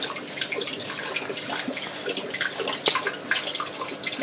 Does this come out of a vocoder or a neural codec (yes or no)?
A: yes